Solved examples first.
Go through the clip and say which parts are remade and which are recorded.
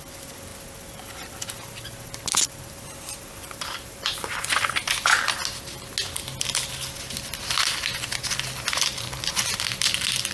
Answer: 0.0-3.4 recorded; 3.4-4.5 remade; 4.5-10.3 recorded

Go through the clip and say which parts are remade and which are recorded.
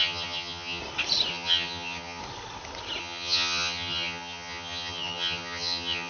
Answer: 0.0-0.8 remade; 0.8-1.3 recorded; 1.3-2.2 remade; 2.2-3.0 recorded; 3.0-6.1 remade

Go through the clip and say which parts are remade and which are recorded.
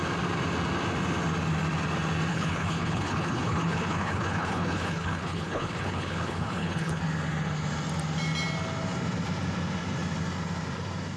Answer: 0.0-2.3 recorded; 2.3-7.0 remade; 7.0-11.2 recorded